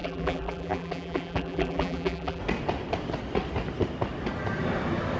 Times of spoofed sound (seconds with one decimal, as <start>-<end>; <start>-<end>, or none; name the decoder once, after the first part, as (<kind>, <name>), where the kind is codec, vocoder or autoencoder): 0.0-2.4 (vocoder, BigVGAN v2)